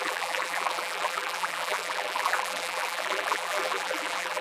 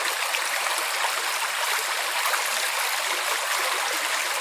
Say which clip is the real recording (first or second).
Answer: second